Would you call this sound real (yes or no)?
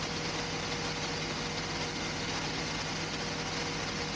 yes